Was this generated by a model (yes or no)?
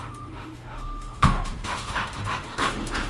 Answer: yes